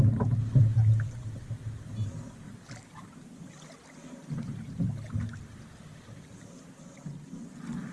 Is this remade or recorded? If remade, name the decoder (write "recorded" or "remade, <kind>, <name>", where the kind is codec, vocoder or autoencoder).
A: recorded